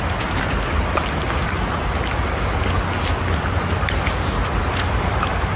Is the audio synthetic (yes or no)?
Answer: no